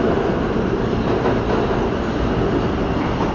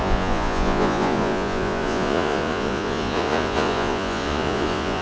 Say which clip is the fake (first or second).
second